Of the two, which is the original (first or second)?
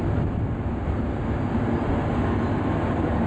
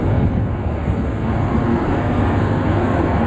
first